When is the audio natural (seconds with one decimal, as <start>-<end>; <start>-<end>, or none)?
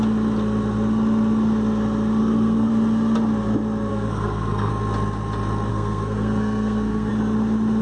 0.0-2.2; 2.7-3.9; 4.7-5.7; 7.1-7.8